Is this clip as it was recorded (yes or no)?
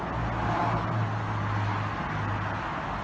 yes